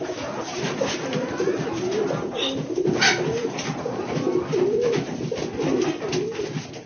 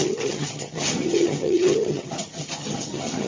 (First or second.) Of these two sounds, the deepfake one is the second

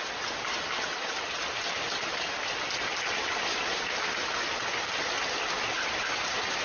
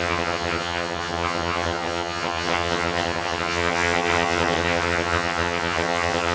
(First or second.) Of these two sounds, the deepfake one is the second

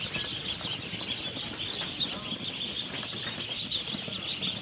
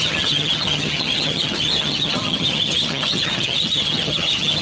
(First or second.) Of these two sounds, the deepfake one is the second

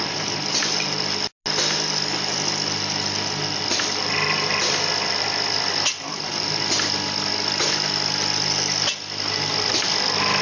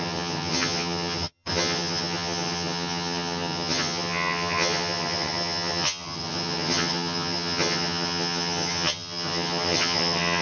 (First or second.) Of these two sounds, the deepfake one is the second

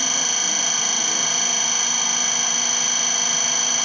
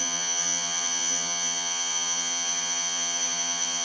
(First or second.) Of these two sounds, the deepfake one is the second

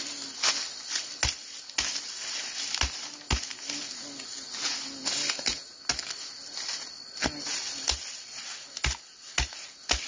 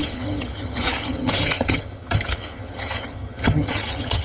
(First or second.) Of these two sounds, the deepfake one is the second